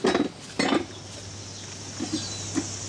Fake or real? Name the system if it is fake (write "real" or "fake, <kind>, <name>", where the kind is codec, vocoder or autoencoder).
real